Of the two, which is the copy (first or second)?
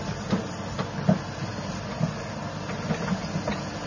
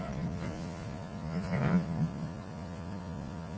second